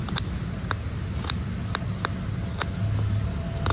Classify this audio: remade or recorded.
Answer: recorded